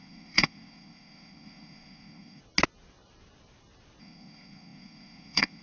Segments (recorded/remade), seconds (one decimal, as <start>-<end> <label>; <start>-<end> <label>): 0.0-2.4 remade; 2.4-4.0 recorded; 4.0-5.6 remade